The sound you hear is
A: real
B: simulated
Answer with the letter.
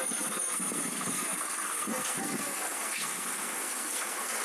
B